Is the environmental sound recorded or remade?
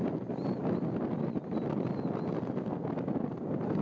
recorded